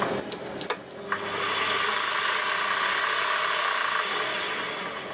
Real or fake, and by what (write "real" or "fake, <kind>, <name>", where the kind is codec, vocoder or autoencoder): real